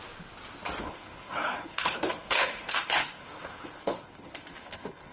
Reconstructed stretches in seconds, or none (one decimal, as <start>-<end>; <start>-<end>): 0.8-5.1